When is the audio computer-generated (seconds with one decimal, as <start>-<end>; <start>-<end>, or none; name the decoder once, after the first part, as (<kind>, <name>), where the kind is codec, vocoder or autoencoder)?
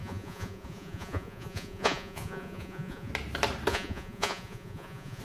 0.0-3.1 (vocoder, Vocos); 3.7-5.2